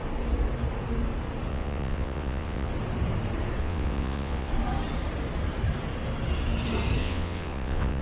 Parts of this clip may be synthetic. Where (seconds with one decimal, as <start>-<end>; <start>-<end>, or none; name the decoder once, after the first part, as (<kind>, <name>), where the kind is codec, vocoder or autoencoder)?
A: 1.5-2.7 (vocoder, WaveNeXt); 3.6-4.5; 7.0-8.0